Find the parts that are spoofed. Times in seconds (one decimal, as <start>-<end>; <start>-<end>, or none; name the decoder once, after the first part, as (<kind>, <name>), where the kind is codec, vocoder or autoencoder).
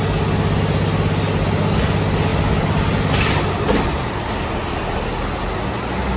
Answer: none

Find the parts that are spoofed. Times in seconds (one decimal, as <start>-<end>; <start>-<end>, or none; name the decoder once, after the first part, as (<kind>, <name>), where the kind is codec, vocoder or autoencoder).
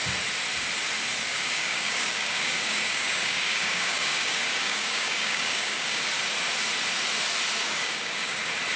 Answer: 1.3-6.0 (codec, DAC); 7.6-8.4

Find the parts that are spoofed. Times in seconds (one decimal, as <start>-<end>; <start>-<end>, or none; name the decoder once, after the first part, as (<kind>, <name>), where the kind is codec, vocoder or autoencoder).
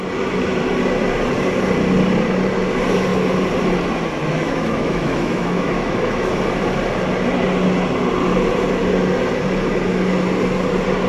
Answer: 4.2-6.3 (autoencoder, DAC-VAE)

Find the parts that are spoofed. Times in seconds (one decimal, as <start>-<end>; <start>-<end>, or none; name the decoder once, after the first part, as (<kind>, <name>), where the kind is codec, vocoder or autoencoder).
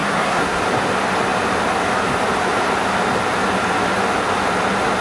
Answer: 0.0-0.6 (codec, SNAC)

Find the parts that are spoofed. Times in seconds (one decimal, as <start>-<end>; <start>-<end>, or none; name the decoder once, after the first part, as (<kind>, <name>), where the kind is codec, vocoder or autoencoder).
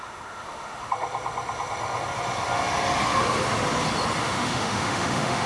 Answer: 0.0-0.9 (autoencoder, DAC-VAE); 4.2-5.5